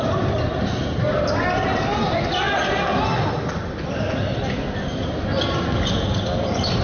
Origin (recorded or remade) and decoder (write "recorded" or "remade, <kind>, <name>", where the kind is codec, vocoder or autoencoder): recorded